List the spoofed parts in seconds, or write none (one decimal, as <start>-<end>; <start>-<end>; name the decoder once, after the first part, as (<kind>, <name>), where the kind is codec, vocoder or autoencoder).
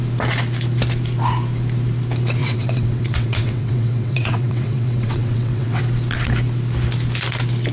2.4-5.8 (vocoder, WaveNeXt)